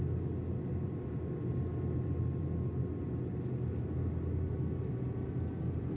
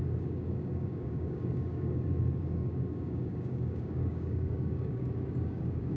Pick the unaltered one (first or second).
first